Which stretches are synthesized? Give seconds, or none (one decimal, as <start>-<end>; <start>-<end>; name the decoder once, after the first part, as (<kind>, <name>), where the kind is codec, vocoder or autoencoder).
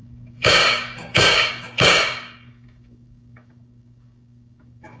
0.0-5.0 (codec, DAC)